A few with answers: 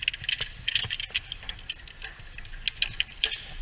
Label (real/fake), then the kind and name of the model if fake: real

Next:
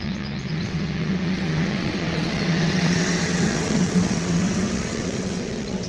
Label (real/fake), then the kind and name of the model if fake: fake, vocoder, WaveNeXt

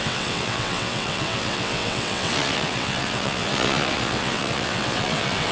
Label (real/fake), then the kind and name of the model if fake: fake, vocoder, WaveNeXt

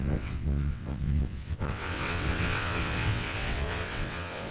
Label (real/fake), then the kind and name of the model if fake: fake, vocoder, WaveNeXt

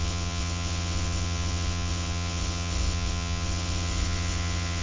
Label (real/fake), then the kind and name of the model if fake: fake, vocoder, WaveNeXt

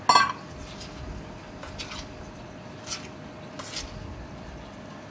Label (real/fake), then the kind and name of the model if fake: real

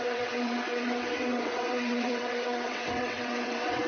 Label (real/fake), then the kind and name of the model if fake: fake, vocoder, WaveNeXt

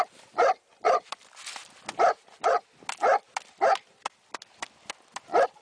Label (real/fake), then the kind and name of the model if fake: real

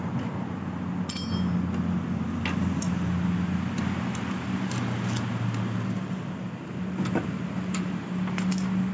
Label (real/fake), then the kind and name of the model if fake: real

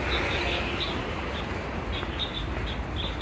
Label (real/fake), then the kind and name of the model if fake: real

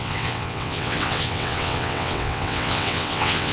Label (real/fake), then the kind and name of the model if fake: fake, vocoder, WaveNeXt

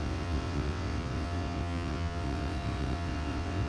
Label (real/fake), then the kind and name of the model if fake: fake, vocoder, WaveNeXt